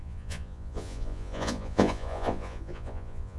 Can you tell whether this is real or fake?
fake